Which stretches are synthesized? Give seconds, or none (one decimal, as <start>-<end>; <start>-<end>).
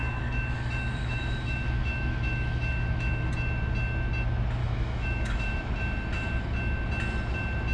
0.0-3.3; 4.6-5.6